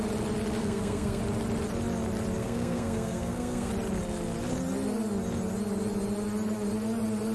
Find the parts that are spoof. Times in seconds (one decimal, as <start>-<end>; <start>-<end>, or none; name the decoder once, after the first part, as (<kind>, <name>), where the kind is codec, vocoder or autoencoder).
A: 0.6-1.2 (codec, SNAC); 2.4-3.7